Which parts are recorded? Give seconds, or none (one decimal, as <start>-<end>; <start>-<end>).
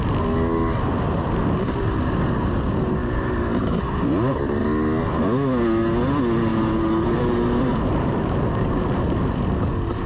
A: 0.0-3.0; 3.8-6.5; 9.6-10.1